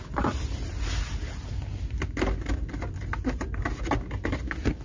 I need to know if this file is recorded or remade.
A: recorded